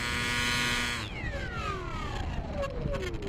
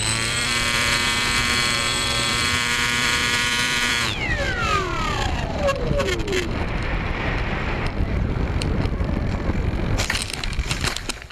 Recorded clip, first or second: first